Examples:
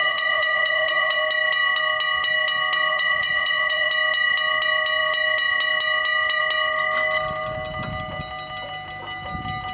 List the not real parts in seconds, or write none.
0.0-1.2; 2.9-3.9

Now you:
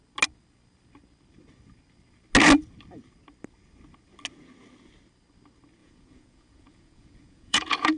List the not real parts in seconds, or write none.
5.8-8.0

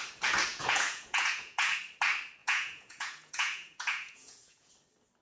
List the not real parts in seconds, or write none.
0.5-1.8; 2.4-4.7

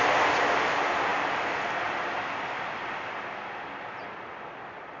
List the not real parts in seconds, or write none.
none

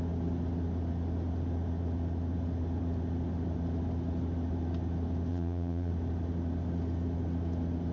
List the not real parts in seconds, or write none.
5.3-5.9